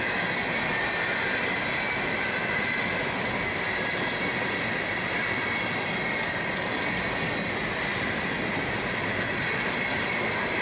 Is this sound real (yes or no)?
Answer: yes